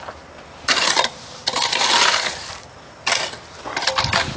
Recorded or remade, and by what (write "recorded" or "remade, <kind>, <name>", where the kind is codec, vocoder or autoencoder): recorded